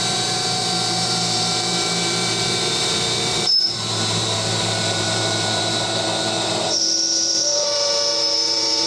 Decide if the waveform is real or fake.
fake